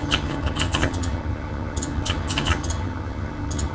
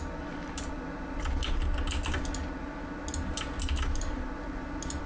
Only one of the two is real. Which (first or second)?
second